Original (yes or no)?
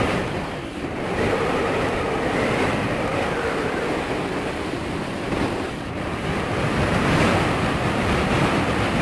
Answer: no